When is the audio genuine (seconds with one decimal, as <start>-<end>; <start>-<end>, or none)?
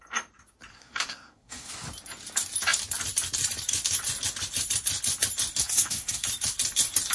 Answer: 0.0-0.7; 1.7-5.6; 6.2-7.1